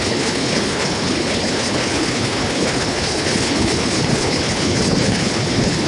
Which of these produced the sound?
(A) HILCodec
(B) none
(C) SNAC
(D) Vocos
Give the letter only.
A